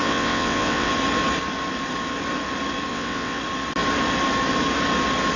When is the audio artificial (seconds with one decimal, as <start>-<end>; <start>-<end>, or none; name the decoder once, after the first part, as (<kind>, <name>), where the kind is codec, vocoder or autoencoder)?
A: 0.0-0.9 (vocoder, WaveNeXt); 2.9-3.4